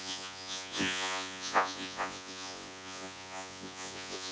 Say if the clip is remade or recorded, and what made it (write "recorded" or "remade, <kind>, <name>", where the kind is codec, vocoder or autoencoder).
remade, vocoder, Vocos